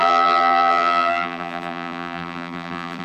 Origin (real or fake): fake